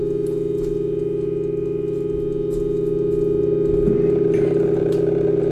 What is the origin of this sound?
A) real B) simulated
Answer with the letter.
A